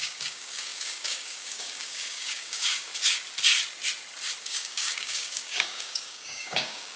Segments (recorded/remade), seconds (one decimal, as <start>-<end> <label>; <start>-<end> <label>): 0.0-2.9 remade; 2.9-4.4 recorded; 4.4-7.0 remade